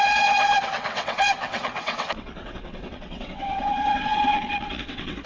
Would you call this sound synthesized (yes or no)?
yes